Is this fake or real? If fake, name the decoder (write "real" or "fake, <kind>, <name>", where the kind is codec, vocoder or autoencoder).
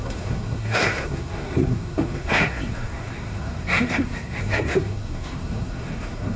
fake, codec, SNAC